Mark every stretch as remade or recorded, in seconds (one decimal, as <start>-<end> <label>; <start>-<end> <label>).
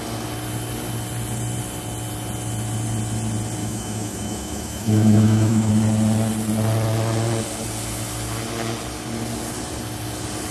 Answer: 0.0-3.6 recorded; 3.6-5.7 remade; 5.7-10.5 recorded